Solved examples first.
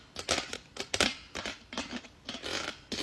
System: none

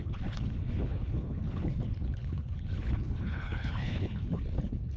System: codec, HILCodec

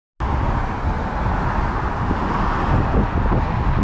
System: none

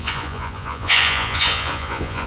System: vocoder, Vocos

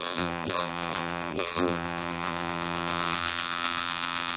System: vocoder, BigVGAN v2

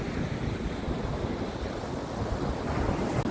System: none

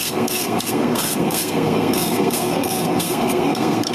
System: codec, SNAC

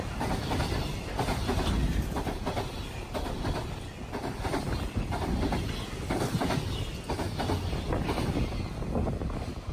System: none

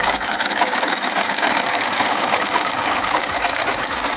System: codec, DAC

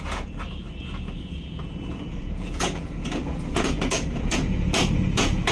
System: vocoder, Vocos